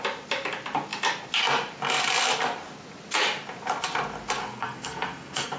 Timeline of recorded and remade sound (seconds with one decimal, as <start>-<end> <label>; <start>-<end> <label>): 0.0-4.4 recorded; 4.4-5.6 remade